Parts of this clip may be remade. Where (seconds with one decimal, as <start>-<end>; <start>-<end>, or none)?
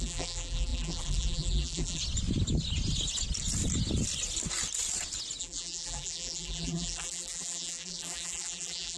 0.0-2.0; 5.4-9.0